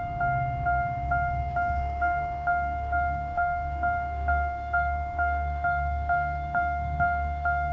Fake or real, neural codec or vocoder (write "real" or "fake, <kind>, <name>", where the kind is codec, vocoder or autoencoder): fake, codec, SNAC